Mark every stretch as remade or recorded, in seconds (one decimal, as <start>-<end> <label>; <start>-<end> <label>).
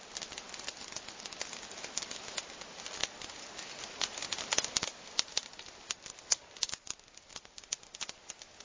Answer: 0.0-8.6 recorded